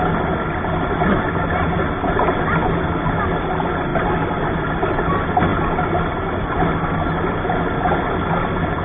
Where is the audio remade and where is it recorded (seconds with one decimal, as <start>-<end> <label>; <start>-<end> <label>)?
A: 0.0-8.8 recorded